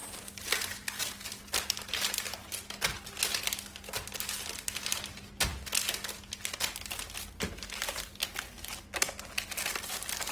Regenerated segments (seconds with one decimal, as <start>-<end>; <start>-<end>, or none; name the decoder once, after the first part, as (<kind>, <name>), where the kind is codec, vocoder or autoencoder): none